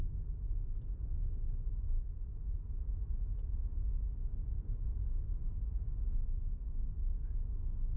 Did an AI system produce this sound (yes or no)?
no